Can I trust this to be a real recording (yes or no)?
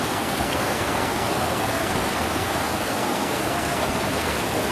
no